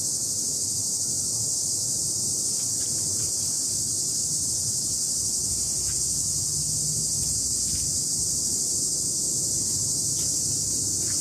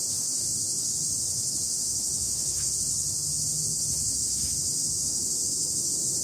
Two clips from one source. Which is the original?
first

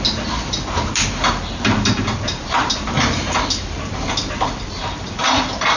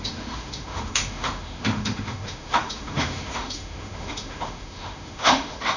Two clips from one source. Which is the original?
first